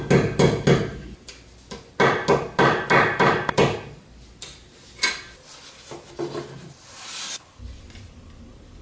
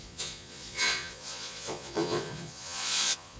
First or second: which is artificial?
second